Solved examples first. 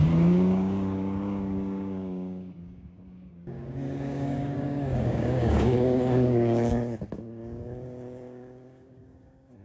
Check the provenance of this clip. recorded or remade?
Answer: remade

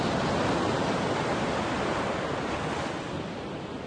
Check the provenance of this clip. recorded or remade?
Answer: recorded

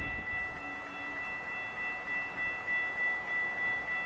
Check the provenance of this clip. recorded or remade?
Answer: recorded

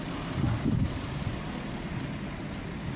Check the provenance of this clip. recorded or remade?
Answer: recorded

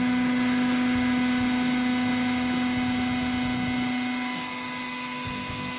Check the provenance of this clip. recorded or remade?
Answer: recorded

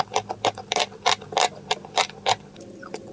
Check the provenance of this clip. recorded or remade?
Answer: recorded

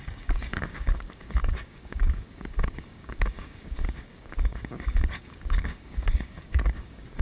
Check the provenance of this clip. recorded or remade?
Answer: remade